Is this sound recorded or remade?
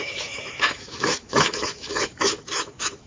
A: remade